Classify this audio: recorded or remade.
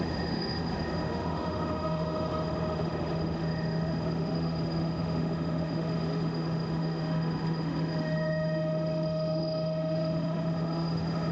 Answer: remade